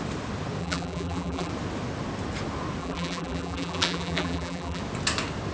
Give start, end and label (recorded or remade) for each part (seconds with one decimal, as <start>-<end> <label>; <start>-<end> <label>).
0.0-0.6 recorded; 0.6-1.5 remade; 1.5-2.8 recorded; 2.8-4.8 remade; 4.8-5.5 recorded

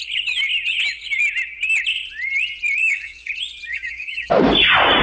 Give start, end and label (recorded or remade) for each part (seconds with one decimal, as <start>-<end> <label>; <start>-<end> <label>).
0.0-2.8 recorded; 2.8-3.3 remade; 3.3-3.7 recorded; 3.7-4.3 remade; 4.3-5.0 recorded